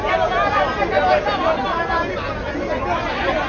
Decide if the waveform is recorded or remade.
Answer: recorded